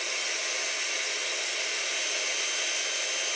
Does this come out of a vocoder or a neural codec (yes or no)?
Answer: no